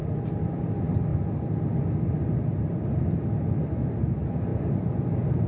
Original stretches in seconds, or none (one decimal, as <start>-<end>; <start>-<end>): 1.1-3.8